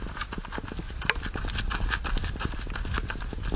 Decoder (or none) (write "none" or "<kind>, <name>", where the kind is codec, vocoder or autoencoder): none